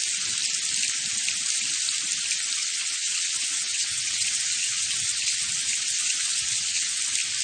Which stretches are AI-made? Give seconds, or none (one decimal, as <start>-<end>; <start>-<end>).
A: 2.6-7.0